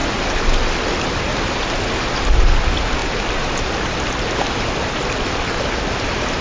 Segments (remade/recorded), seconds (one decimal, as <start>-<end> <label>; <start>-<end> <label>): 0.0-6.4 recorded